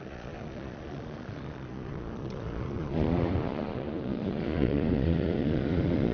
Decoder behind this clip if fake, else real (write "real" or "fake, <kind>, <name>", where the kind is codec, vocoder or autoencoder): fake, vocoder, Vocos